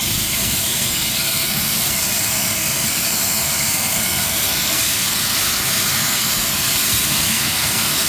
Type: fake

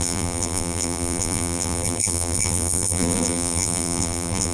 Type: fake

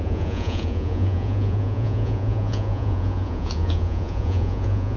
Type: fake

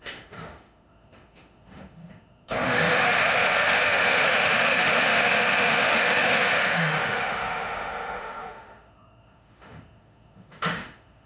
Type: fake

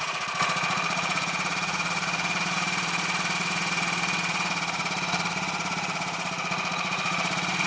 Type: fake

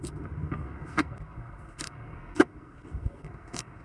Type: fake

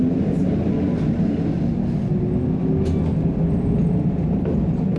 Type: real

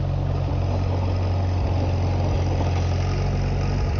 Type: real